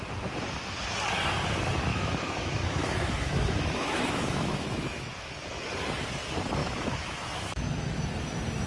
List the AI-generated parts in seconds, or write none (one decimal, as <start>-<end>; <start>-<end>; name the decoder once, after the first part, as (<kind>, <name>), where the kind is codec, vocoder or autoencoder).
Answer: 1.9-5.3 (autoencoder, DAC-VAE); 6.6-8.0